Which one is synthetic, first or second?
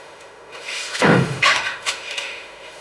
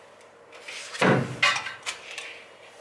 first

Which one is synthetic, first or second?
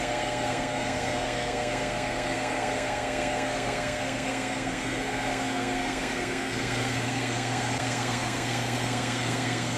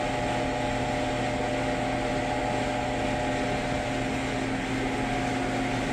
first